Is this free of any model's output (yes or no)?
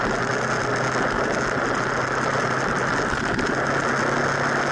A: yes